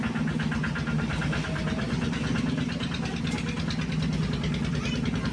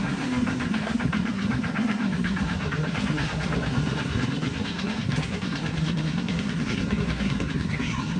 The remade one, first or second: second